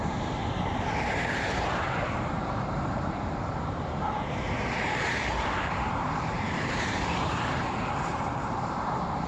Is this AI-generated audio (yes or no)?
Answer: yes